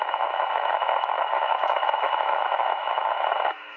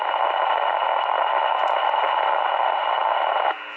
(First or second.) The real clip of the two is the second